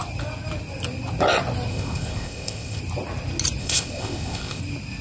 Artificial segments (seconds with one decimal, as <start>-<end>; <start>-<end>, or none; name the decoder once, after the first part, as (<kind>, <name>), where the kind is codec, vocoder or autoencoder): 1.7-2.8 (codec, ZipCodec); 3.6-4.6